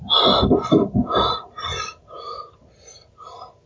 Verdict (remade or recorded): recorded